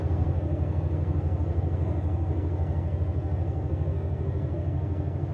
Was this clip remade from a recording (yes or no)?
yes